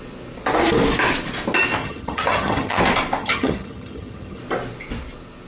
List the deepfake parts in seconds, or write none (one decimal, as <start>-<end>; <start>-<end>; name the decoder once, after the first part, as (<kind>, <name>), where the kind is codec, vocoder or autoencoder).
1.8-2.8 (vocoder, HiFi-GAN); 3.2-4.4